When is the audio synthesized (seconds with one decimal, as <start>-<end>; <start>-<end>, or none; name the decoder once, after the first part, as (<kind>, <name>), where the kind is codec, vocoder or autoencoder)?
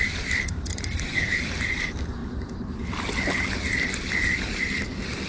0.0-2.2 (vocoder, BigVGAN v2)